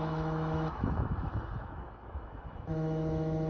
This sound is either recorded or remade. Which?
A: remade